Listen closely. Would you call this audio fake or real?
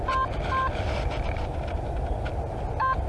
real